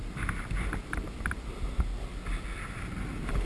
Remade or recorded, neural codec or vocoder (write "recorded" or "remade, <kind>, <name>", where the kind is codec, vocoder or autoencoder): recorded